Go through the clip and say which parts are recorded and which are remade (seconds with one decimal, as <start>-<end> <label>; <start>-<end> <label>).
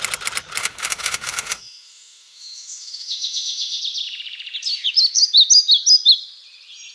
0.0-0.6 recorded; 0.6-3.8 remade; 3.8-6.9 recorded